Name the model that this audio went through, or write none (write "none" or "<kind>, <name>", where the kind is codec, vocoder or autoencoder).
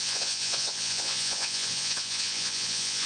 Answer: vocoder, Vocos